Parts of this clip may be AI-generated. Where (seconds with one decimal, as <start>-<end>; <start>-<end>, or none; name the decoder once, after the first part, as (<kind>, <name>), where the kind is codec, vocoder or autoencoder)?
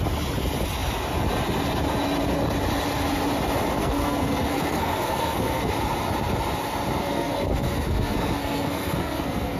3.8-5.7 (codec, SNAC); 7.0-9.6